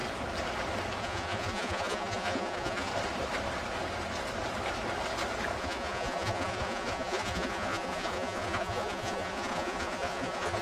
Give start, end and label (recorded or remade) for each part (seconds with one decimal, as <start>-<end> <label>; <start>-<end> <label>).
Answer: 0.0-1.0 recorded; 1.0-2.9 remade; 2.9-5.6 recorded; 5.6-10.6 remade